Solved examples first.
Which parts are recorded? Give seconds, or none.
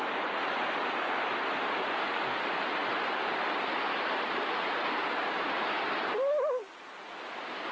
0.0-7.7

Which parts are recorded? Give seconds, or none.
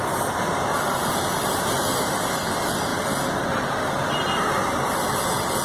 0.0-5.6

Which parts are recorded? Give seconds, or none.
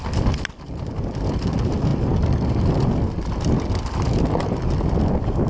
0.0-5.5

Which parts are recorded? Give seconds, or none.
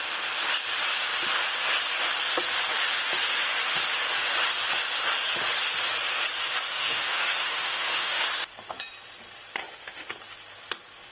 0.0-6.7; 8.2-9.6; 10.1-11.1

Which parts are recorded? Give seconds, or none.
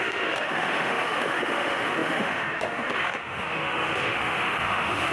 none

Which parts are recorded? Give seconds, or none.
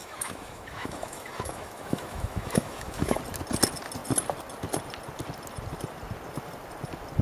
3.2-7.2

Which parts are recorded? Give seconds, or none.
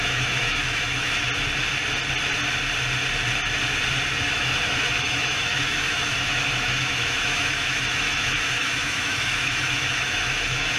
1.2-4.2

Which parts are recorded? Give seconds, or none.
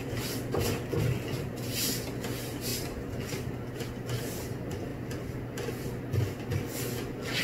0.0-7.4